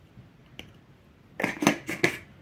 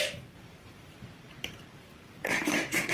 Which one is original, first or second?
first